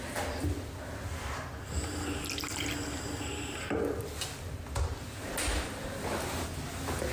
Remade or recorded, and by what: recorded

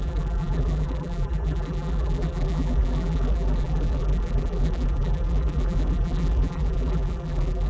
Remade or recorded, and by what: remade, vocoder, BigVGAN v2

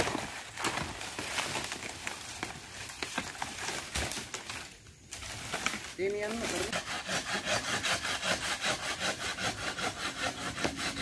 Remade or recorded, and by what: recorded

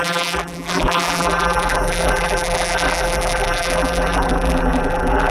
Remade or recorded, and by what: remade, vocoder, BigVGAN v2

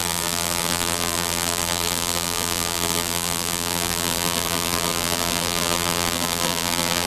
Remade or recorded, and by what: remade, vocoder, BigVGAN v2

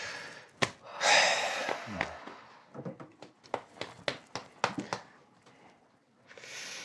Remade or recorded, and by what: recorded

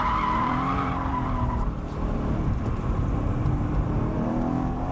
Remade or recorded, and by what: remade, vocoder, BigVGAN v2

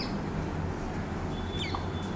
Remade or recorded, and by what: recorded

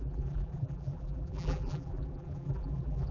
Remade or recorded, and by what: remade, vocoder, BigVGAN v2